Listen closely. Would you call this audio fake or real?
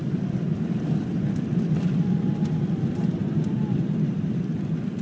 real